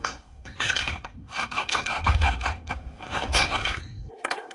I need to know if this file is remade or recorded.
remade